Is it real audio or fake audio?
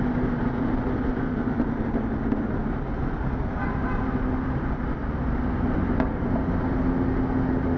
real